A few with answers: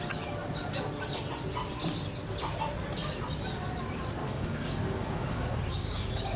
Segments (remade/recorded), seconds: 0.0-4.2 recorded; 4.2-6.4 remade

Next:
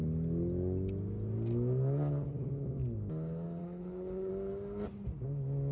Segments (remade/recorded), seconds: 0.0-3.6 recorded; 3.6-4.3 remade; 4.3-5.7 recorded

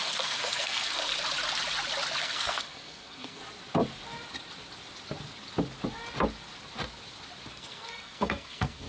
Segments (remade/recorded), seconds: 0.0-1.1 remade; 1.1-2.2 recorded; 2.2-3.4 remade; 3.4-7.5 recorded; 7.5-8.9 remade

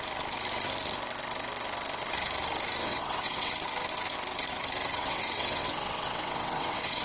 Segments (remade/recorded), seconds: 0.0-2.8 recorded; 2.8-3.5 remade; 3.5-5.0 recorded; 5.0-7.0 remade